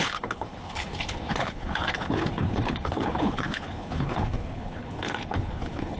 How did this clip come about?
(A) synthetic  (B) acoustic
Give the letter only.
A